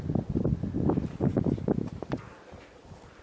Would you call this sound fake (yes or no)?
no